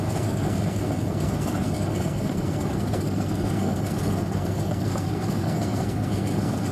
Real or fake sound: fake